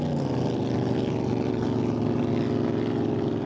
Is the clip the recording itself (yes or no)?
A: yes